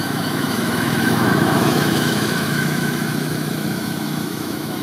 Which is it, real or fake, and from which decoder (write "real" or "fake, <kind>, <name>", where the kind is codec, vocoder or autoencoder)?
fake, autoencoder, DAC-VAE